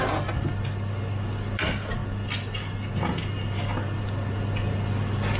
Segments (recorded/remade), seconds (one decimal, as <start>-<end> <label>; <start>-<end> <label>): 0.0-5.4 recorded